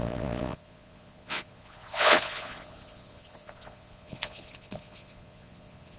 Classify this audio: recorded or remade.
remade